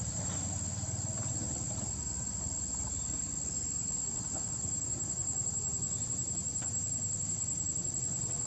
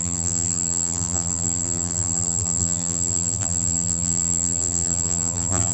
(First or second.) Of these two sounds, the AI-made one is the second